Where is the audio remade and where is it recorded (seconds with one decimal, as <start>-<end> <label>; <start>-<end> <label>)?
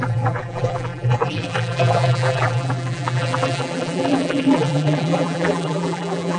0.0-6.4 remade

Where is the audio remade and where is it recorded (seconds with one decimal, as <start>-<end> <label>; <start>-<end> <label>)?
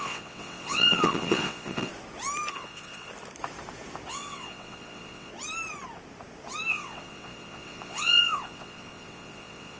0.0-1.9 remade; 1.9-2.5 recorded; 2.5-3.1 remade; 3.1-4.1 recorded; 4.1-5.3 remade; 5.3-6.7 recorded; 6.7-9.8 remade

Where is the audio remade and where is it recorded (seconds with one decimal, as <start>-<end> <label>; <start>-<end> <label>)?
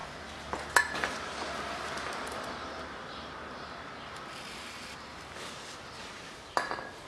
0.0-7.1 recorded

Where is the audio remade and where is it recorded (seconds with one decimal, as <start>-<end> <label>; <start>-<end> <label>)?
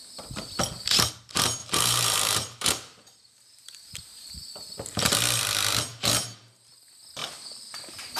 0.0-1.6 recorded; 1.6-4.5 remade; 4.5-8.2 recorded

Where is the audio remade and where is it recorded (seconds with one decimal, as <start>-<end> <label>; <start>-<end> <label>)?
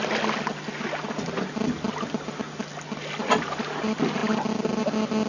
0.0-5.3 recorded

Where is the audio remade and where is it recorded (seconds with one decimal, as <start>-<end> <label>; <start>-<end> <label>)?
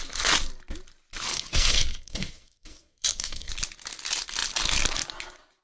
0.0-1.3 recorded; 1.3-3.5 remade; 3.5-5.6 recorded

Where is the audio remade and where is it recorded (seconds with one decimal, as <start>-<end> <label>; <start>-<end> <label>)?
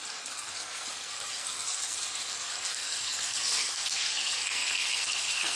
0.0-5.6 remade